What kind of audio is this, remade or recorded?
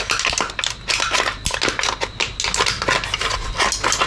recorded